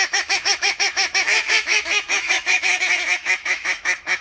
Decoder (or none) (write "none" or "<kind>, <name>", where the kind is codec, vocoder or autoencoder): autoencoder, DAC-VAE